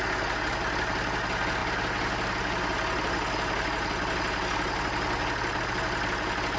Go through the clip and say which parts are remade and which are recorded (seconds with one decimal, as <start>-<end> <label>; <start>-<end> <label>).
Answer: 0.0-6.6 recorded